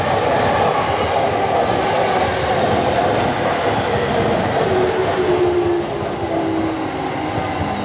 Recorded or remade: recorded